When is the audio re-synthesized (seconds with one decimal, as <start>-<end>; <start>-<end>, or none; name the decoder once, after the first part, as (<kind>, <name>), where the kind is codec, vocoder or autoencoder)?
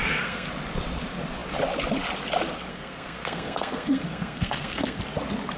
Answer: 0.0-0.5 (codec, SNAC); 2.7-5.0